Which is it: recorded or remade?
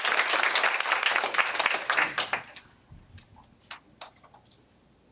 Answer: recorded